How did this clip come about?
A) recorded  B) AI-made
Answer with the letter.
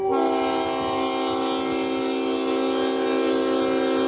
A